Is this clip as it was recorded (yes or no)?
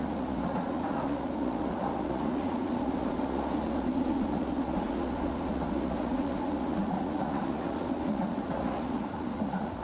no